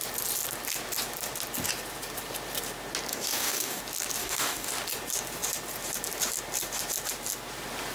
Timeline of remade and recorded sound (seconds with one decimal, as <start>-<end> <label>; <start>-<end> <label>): 0.0-3.1 recorded; 3.1-3.8 remade; 3.8-4.2 recorded; 4.2-4.7 remade; 4.7-7.9 recorded